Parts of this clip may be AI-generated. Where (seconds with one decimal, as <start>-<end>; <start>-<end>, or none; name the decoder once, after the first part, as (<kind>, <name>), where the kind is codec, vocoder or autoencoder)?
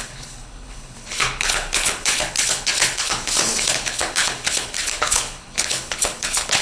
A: 0.0-6.6 (codec, HILCodec)